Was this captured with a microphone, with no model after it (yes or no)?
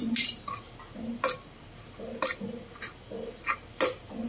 yes